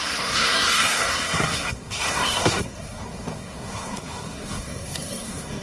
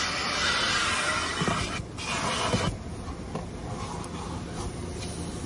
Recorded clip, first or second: second